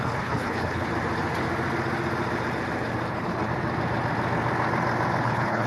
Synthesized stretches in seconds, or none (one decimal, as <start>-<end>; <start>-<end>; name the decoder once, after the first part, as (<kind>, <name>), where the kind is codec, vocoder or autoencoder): 0.0-0.9 (codec, HILCodec); 3.1-3.5; 5.2-5.7